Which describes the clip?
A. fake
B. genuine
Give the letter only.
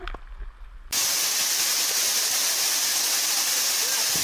B